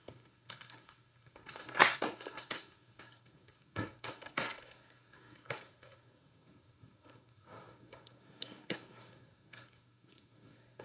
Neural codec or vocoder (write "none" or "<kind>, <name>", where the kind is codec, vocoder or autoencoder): codec, SNAC